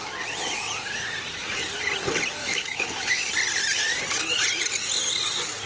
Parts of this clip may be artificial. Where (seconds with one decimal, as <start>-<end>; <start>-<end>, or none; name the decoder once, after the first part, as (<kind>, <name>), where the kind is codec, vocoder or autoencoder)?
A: 2.4-3.3 (autoencoder, DAC-VAE)